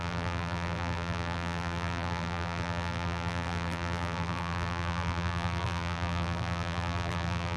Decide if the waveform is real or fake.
fake